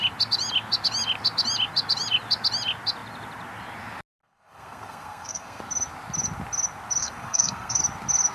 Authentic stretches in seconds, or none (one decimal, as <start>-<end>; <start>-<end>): 0.0-4.2; 5.6-7.0; 7.8-8.3